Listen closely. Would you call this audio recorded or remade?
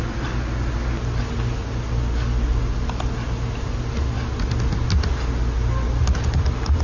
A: recorded